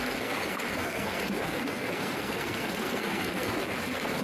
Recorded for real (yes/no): no